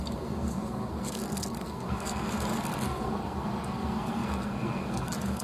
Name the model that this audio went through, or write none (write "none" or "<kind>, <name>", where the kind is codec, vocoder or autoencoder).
codec, SNAC